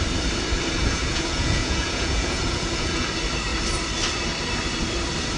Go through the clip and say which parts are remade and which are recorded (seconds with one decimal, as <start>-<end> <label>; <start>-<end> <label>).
0.0-0.8 recorded; 0.8-3.1 remade; 3.1-5.4 recorded